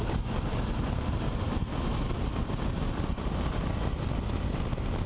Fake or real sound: real